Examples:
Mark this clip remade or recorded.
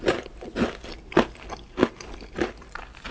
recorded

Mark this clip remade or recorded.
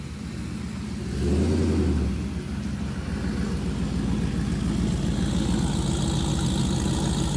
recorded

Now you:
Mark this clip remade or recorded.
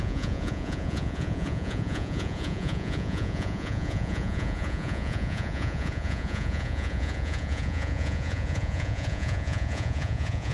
remade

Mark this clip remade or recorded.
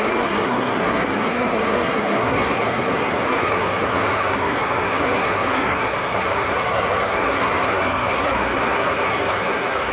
remade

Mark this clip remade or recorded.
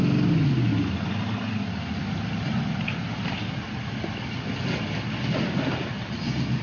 recorded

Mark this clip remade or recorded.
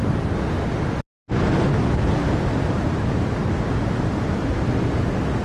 recorded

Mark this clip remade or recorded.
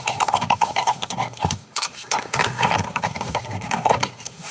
remade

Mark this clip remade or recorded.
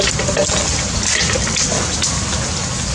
recorded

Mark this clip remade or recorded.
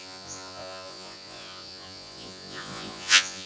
remade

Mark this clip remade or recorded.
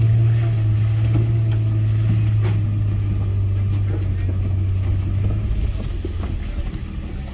recorded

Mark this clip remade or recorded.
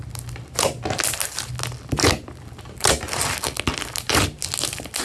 recorded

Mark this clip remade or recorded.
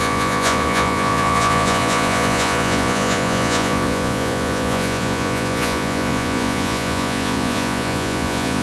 remade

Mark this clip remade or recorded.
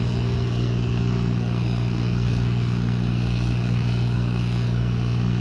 remade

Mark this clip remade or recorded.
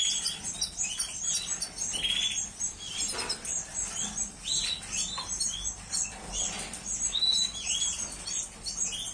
recorded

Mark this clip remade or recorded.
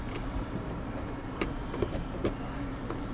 recorded